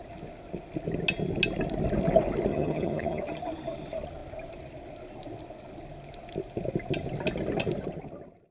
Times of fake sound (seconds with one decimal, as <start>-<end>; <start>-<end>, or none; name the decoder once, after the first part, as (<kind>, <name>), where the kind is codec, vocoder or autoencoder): 2.5-3.2 (vocoder, HiFi-GAN)